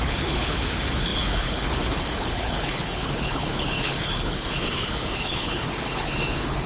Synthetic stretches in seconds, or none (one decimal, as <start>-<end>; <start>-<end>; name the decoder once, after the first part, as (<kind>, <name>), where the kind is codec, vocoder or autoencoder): 0.0-6.7 (codec, HILCodec)